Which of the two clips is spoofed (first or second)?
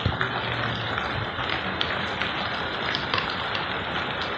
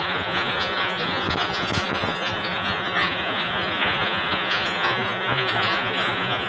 second